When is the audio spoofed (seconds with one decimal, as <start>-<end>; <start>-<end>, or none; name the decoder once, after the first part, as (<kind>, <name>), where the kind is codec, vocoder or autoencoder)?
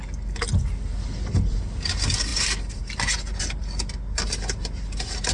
none